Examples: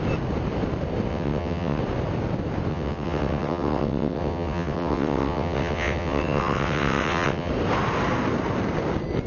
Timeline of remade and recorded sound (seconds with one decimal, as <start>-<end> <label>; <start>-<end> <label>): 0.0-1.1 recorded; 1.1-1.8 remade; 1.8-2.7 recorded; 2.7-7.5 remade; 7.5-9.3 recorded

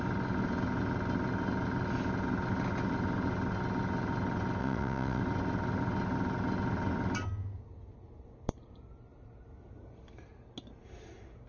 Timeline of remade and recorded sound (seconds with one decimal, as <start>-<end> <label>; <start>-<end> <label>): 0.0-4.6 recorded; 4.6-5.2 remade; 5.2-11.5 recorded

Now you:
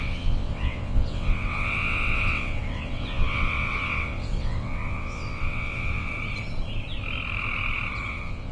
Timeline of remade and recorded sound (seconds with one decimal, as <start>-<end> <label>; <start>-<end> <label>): 0.0-6.1 remade; 6.1-8.1 recorded; 8.1-8.5 remade

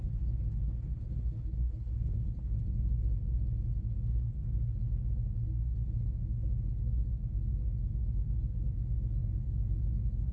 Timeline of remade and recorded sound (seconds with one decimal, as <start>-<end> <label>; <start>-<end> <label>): 0.0-10.3 recorded